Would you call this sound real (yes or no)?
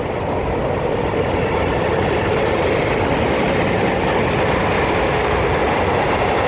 yes